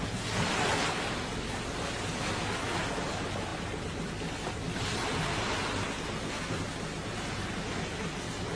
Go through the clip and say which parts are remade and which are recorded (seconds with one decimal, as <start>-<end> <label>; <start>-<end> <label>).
0.0-8.6 recorded